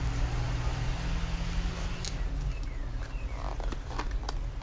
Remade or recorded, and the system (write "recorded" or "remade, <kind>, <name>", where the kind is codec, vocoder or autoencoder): recorded